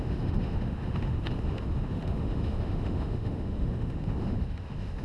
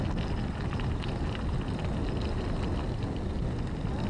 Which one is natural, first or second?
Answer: second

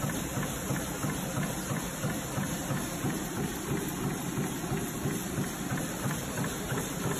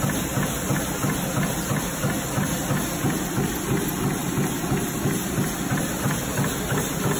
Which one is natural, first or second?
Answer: second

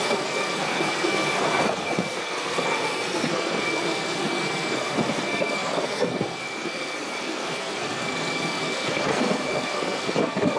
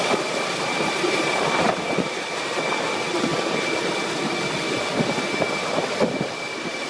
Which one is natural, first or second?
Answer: second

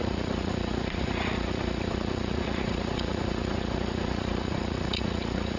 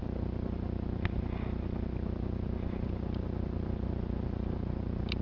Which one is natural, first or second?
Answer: second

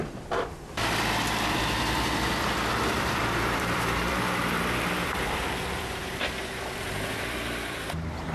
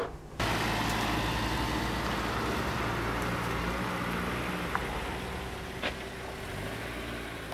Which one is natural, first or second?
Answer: second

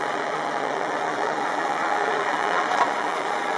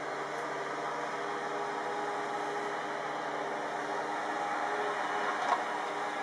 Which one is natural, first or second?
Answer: second